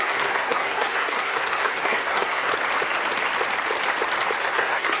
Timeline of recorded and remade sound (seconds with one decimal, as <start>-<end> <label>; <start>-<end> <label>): 0.0-2.5 remade; 2.5-4.4 recorded; 4.4-5.0 remade